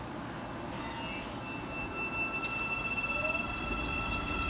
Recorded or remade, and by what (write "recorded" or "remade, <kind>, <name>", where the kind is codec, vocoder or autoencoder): recorded